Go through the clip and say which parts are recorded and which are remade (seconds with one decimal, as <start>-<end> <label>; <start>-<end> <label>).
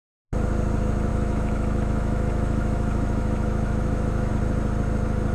0.0-1.1 recorded; 1.1-4.3 remade; 4.3-5.3 recorded